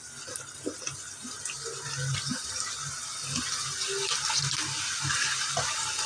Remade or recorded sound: recorded